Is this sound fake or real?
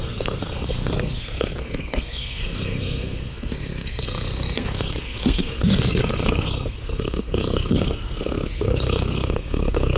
fake